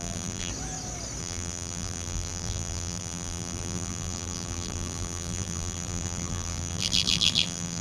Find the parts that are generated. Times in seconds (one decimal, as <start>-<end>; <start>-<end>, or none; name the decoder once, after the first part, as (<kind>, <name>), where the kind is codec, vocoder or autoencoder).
0.0-0.5 (vocoder, BigVGAN v2); 1.2-7.8